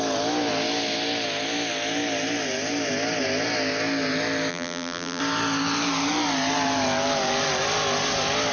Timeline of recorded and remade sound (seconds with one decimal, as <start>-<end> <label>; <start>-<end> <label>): 0.0-4.5 recorded; 4.5-5.2 remade; 5.2-8.5 recorded